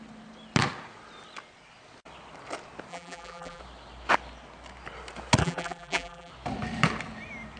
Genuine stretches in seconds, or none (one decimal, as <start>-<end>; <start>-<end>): 0.0-2.9; 3.6-5.4; 6.3-7.6